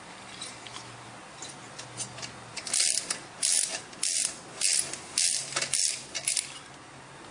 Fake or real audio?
real